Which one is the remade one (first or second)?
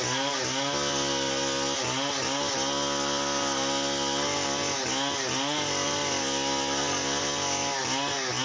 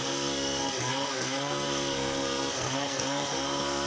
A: second